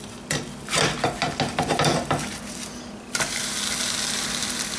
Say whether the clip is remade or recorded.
recorded